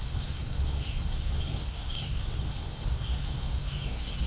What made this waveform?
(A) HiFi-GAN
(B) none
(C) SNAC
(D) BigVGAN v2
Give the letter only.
C